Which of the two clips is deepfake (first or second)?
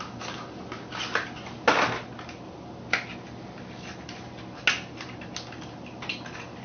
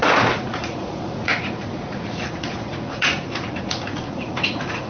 second